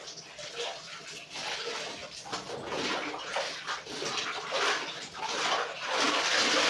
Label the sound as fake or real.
real